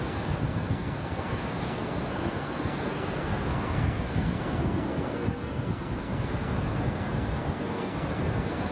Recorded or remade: remade